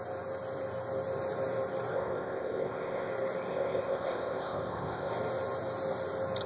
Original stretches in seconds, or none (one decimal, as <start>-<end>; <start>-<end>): 0.0-1.9; 3.1-3.5; 5.1-6.5